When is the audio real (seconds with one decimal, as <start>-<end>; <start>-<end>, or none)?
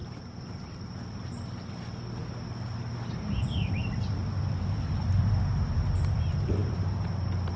0.0-4.6